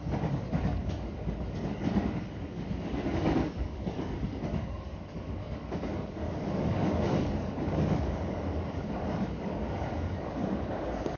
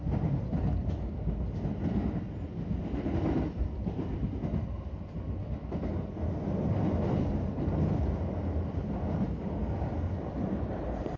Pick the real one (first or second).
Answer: second